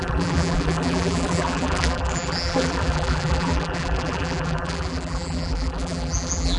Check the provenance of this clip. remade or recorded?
remade